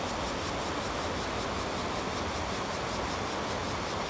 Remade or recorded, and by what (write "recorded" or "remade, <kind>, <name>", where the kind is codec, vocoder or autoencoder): recorded